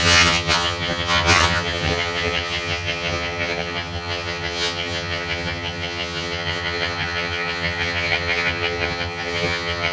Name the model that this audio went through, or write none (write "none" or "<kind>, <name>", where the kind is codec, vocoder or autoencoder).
vocoder, HiFi-GAN